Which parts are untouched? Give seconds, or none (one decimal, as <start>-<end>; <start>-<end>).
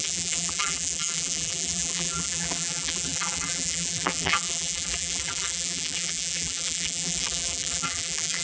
none